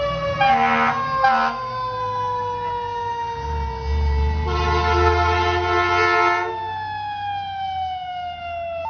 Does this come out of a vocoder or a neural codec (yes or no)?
no